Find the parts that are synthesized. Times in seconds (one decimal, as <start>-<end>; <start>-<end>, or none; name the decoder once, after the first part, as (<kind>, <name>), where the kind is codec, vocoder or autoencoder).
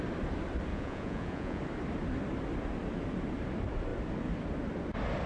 0.7-1.6 (vocoder, Vocos)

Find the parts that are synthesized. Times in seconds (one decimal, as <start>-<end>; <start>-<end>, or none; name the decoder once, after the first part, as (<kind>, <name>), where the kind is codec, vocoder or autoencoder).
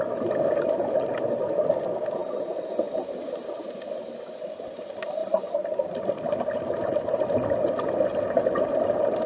none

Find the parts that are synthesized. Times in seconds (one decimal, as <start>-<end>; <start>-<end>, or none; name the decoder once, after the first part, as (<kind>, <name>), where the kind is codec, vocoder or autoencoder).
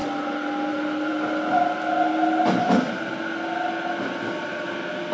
none